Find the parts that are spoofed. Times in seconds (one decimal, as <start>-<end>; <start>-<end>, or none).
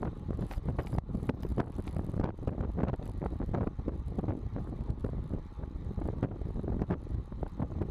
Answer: 0.0-1.5; 4.6-5.0